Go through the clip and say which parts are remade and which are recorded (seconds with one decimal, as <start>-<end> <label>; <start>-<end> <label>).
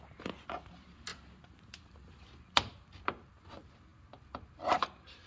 0.0-5.3 recorded